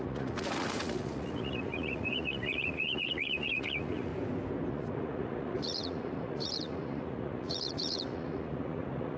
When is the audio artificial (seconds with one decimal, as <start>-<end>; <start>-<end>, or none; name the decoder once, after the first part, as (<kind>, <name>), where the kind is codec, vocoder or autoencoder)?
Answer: 0.0-4.1 (vocoder, Vocos); 4.7-9.2